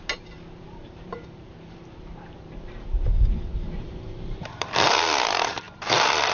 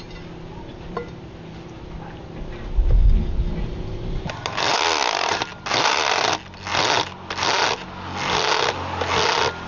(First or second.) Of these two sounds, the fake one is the first